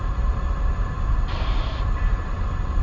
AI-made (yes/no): no